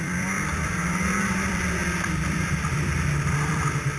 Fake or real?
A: fake